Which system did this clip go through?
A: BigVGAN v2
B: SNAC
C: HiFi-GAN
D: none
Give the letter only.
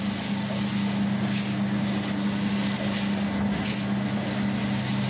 D